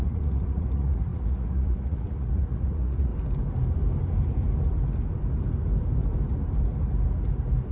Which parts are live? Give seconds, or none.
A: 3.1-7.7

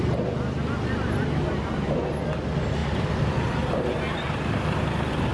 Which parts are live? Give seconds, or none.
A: 1.7-2.8; 3.9-5.3

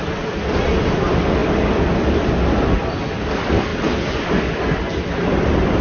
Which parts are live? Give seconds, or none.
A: 0.0-5.8

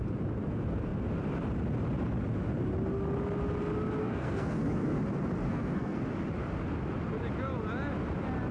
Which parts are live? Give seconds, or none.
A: 0.0-4.0; 5.0-5.4; 6.0-8.5

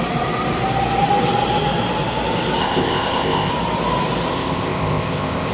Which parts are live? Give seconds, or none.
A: 0.0-2.6; 3.5-4.3